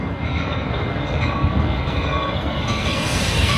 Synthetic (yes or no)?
yes